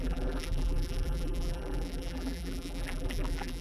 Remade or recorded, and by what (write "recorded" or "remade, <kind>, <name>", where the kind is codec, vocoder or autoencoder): remade, vocoder, BigVGAN v2